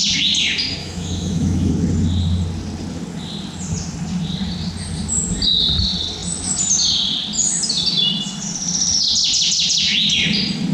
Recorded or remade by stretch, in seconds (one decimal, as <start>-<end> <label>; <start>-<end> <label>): 0.0-0.8 recorded; 0.8-1.7 remade; 1.7-10.7 recorded